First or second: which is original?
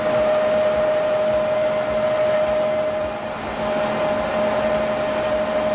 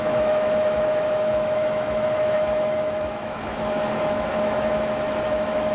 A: first